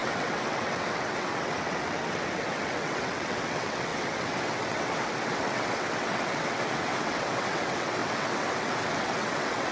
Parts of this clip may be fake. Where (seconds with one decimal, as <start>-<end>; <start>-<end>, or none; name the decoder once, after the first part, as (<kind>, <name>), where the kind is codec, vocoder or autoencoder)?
0.0-9.7 (vocoder, WaveNeXt)